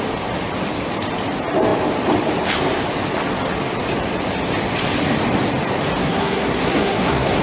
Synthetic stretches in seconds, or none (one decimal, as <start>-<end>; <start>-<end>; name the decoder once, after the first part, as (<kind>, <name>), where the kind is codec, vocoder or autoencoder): 6.0-7.4 (codec, SNAC)